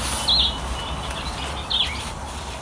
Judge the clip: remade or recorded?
recorded